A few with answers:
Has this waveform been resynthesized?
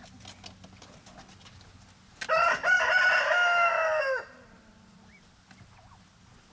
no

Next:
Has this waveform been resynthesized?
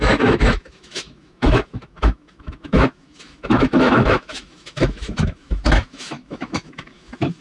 yes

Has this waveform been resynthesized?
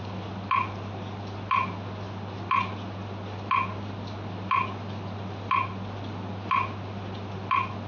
no